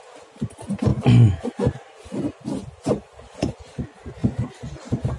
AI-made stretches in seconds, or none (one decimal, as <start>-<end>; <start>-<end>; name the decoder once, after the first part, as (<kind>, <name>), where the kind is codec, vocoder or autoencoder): none